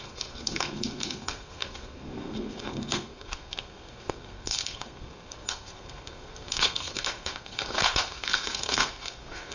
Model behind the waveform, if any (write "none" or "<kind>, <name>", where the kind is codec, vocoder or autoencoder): codec, SNAC